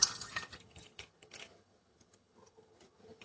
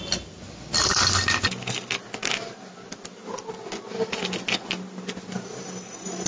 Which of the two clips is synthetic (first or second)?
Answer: first